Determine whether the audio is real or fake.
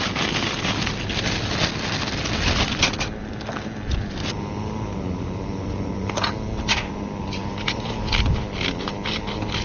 real